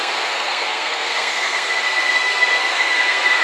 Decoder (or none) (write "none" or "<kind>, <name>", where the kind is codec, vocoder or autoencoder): codec, SNAC